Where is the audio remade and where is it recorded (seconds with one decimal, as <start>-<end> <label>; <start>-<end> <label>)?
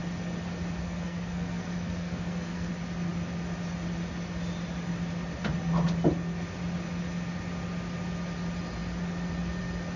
0.0-0.8 recorded; 0.8-2.7 remade; 2.7-10.0 recorded